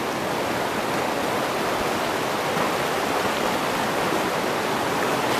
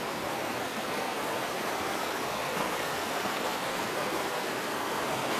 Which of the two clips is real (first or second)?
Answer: first